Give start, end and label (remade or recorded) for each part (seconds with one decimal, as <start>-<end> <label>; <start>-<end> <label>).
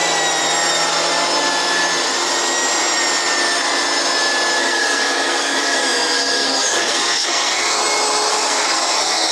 0.0-4.6 recorded; 4.6-7.8 remade; 7.8-8.3 recorded; 8.3-9.3 remade